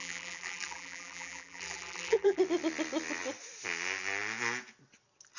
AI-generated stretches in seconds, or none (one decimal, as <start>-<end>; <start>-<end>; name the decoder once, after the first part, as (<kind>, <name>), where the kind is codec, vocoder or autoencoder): 0.0-2.4 (vocoder, BigVGAN v2)